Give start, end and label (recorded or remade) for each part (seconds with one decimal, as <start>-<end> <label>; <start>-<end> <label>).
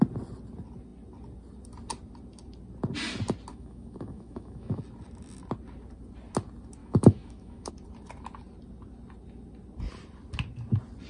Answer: 0.0-3.5 recorded; 3.5-4.8 remade; 4.8-6.8 recorded; 6.8-7.7 remade; 7.7-11.1 recorded